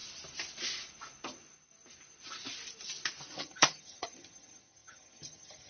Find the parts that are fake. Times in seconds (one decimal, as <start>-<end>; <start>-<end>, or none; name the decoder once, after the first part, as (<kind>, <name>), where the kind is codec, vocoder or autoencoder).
3.4-5.7 (vocoder, HiFi-GAN)